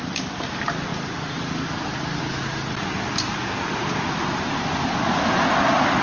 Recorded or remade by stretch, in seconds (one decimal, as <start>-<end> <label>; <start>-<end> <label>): 0.0-0.9 recorded; 0.9-2.2 remade; 2.2-6.0 recorded